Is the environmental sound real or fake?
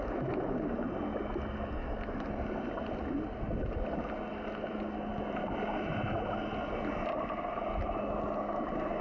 real